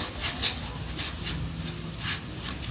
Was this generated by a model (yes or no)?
no